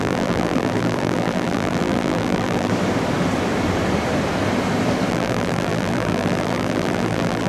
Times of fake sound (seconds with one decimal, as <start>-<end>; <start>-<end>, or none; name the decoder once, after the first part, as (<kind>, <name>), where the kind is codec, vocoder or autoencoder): 0.0-2.7 (vocoder, BigVGAN v2); 5.1-7.5